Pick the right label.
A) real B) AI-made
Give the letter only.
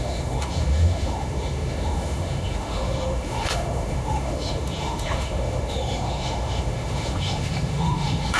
B